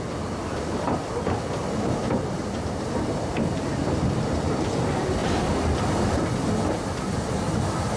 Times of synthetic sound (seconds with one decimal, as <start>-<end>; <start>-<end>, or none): 2.0-4.7

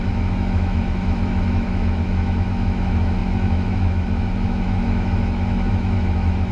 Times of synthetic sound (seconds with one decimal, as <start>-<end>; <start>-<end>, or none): 0.0-6.5

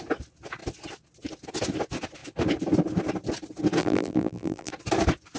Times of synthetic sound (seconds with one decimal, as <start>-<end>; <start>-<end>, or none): 3.8-4.7

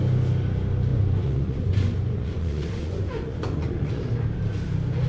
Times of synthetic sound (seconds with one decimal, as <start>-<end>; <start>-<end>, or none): 0.9-4.0

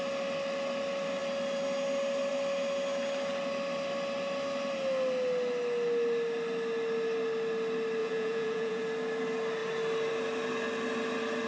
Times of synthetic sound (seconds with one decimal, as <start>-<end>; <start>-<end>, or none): 8.0-8.8

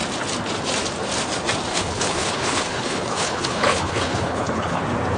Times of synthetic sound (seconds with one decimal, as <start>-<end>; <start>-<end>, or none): 1.7-4.8

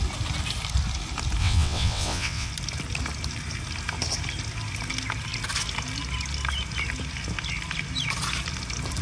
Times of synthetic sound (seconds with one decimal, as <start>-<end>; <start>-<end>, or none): 1.4-2.5